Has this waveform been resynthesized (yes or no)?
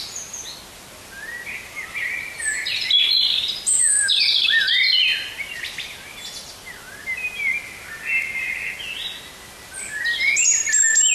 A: no